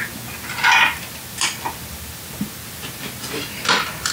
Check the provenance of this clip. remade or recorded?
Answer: recorded